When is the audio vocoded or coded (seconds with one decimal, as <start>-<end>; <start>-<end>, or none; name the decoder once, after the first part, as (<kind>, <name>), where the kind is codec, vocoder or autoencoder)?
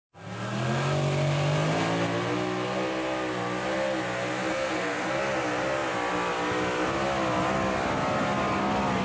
4.5-5.2 (codec, SNAC)